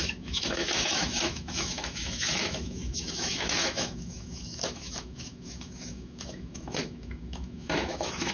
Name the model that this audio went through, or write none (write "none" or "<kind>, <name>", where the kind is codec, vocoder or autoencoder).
autoencoder, DAC-VAE